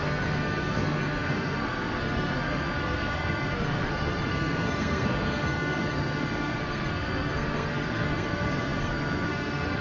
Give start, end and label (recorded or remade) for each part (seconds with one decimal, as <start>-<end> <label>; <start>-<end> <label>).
0.0-9.8 remade